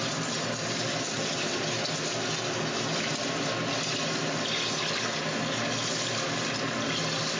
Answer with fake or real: real